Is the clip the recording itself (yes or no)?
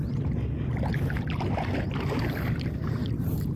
yes